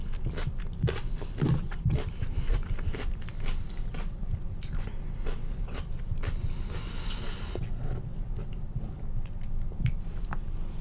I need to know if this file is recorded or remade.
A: recorded